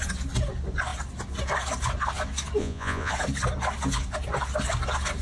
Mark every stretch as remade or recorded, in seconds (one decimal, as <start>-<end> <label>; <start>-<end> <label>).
0.0-2.6 recorded; 2.6-3.1 remade; 3.1-5.2 recorded